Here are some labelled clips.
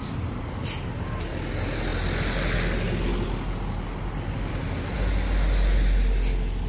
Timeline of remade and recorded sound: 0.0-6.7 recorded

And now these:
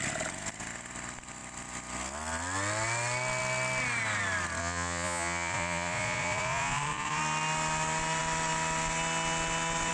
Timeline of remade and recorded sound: 0.0-4.6 recorded; 4.6-7.2 remade; 7.2-9.9 recorded

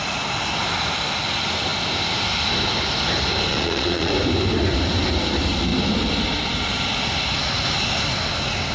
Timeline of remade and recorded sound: 0.0-3.5 recorded; 3.5-4.1 remade; 4.1-8.7 recorded

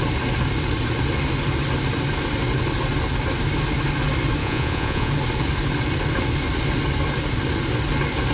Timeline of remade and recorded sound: 0.0-4.4 recorded; 4.4-5.1 remade; 5.1-8.3 recorded

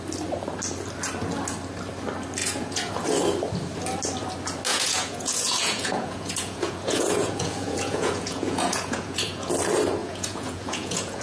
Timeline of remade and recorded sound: 0.0-2.4 recorded; 2.4-2.9 remade; 2.9-4.7 recorded; 4.7-9.5 remade; 9.5-10.0 recorded; 10.0-11.2 remade